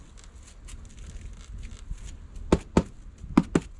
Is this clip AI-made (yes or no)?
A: no